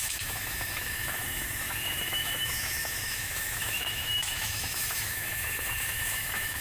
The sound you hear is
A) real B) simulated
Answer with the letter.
B